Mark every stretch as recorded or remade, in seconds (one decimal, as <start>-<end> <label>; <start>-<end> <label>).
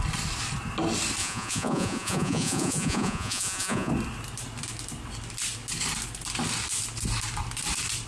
0.0-1.2 recorded; 1.2-3.9 remade; 3.9-8.1 recorded